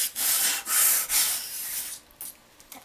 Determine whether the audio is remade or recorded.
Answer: recorded